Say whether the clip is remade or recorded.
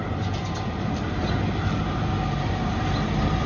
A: recorded